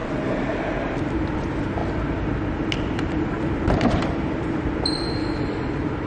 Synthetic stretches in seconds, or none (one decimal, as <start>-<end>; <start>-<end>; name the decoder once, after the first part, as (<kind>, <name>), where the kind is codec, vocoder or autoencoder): none